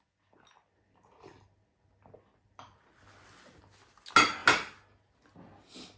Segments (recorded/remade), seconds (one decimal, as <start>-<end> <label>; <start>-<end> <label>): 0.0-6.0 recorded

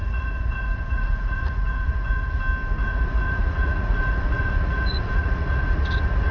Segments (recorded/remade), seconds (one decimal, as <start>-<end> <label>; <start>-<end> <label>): 0.0-2.4 remade; 2.4-2.8 recorded; 2.8-6.3 remade

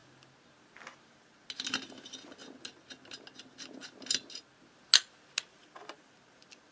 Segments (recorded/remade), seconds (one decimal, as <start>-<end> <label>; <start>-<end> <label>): 0.0-6.7 recorded

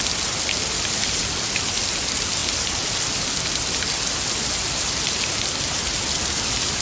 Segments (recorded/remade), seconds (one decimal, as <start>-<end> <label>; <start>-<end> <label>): 0.0-6.8 recorded